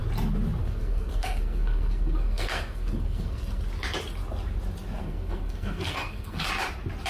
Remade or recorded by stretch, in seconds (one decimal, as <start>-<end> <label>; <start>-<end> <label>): 0.0-0.6 recorded; 0.6-3.6 remade; 3.6-5.0 recorded; 5.0-6.4 remade; 6.4-7.1 recorded